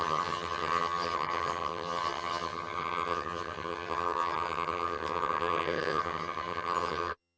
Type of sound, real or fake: fake